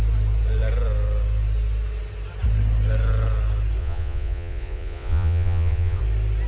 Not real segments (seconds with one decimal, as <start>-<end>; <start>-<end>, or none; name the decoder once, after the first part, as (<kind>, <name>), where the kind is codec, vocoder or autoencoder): 3.8-6.0 (vocoder, Vocos)